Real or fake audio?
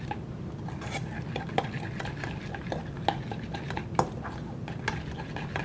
real